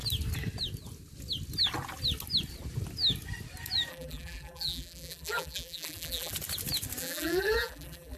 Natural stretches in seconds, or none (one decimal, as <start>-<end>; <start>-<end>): 0.0-3.9; 6.3-7.0